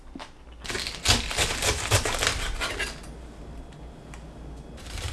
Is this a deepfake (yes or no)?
no